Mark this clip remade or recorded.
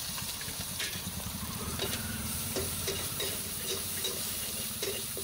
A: remade